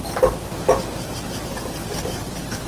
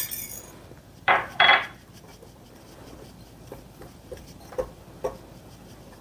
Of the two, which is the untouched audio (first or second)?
first